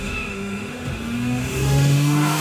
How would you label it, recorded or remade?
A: remade